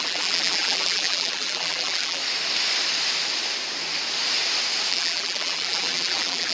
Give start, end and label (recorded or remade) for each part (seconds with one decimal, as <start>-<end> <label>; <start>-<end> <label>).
0.0-2.2 remade; 2.2-4.9 recorded; 4.9-6.5 remade